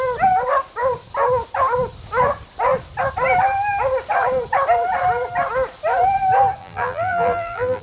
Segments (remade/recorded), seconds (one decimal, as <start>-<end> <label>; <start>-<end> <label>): 0.0-6.6 recorded; 6.6-7.8 remade